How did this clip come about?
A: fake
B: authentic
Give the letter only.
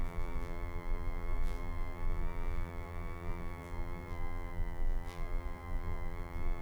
A